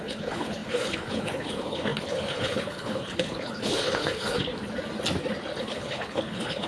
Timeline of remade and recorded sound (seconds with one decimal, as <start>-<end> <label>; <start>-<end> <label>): 0.0-4.5 remade; 4.5-5.6 recorded; 5.6-6.7 remade